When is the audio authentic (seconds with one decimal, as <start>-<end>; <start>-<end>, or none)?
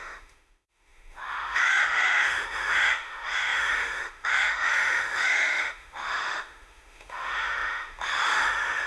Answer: none